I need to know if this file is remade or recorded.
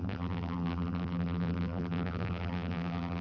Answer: remade